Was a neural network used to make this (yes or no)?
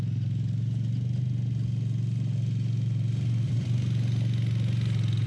no